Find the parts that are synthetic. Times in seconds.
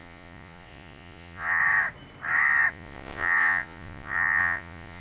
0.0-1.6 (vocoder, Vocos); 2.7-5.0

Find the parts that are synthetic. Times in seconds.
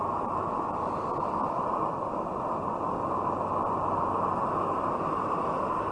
none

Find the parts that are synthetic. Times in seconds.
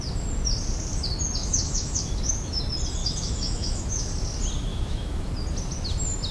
1.4-2.6 (autoencoder, DAC-VAE); 3.0-4.1; 4.7-5.3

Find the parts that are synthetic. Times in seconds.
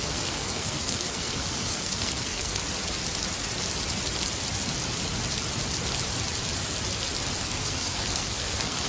0.0-2.6 (codec, SNAC); 7.4-8.9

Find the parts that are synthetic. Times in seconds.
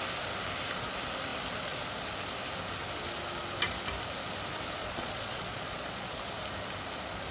4.8-6.3 (vocoder, Vocos)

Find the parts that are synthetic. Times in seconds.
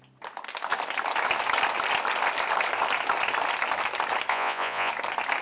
4.3-4.9 (vocoder, Vocos)